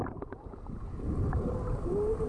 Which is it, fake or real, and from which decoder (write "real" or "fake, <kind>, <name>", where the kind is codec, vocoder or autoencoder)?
real